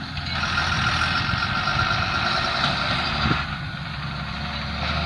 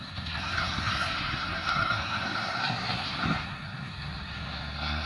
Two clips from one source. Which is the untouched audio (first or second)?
first